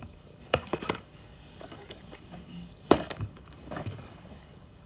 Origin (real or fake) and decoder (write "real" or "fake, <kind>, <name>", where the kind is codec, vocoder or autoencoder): fake, codec, DAC